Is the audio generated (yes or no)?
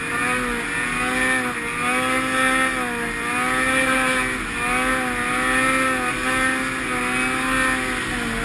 no